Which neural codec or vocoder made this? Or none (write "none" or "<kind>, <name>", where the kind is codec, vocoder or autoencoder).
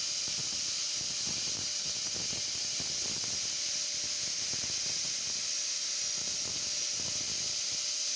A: none